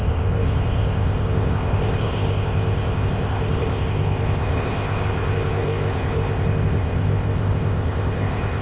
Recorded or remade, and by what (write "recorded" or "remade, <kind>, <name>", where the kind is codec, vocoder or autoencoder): remade, codec, ZipCodec